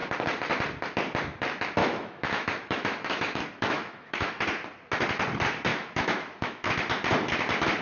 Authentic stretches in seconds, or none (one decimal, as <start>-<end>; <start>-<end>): 0.0-1.8; 4.4-5.7; 6.7-7.8